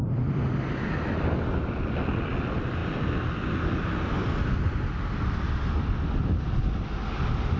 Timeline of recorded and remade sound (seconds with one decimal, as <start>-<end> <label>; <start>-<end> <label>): 0.0-7.6 recorded